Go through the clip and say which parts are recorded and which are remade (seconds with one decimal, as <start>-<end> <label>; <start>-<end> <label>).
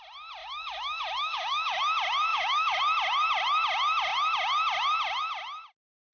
0.0-0.4 recorded; 0.4-1.8 remade; 1.8-2.3 recorded; 2.3-2.8 remade; 2.8-6.1 recorded